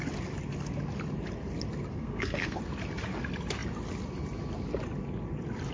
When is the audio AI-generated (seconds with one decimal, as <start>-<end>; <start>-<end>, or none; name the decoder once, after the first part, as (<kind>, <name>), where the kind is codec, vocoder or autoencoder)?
1.9-2.6 (codec, SNAC)